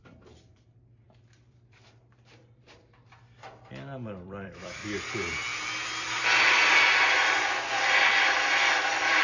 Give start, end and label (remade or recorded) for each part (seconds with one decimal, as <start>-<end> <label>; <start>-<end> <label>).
0.0-4.8 remade; 4.8-7.5 recorded; 7.5-9.2 remade